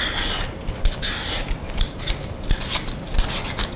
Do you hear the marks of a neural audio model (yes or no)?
no